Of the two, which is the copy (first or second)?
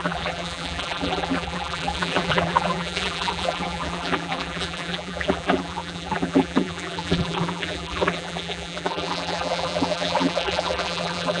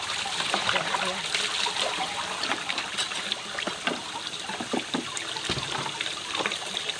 first